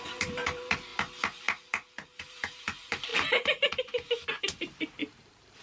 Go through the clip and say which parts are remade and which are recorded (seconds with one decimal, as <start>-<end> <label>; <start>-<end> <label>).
0.0-0.9 remade; 0.9-2.2 recorded; 2.2-3.1 remade; 3.1-4.3 recorded; 4.3-5.6 remade